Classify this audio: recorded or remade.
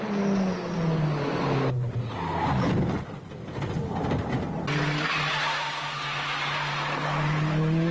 recorded